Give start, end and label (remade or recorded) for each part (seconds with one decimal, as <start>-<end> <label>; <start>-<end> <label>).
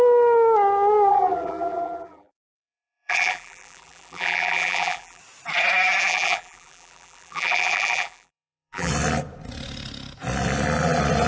0.0-1.1 recorded; 1.1-5.2 remade; 5.2-6.1 recorded; 6.1-8.9 remade; 8.9-11.3 recorded